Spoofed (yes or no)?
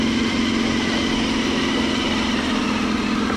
no